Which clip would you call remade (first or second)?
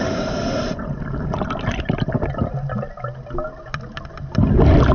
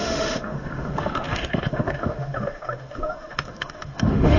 second